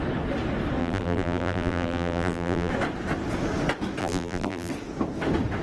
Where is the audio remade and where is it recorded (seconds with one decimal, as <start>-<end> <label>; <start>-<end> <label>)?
0.0-0.8 recorded; 0.8-2.7 remade; 2.7-4.0 recorded; 4.0-4.7 remade; 4.7-5.6 recorded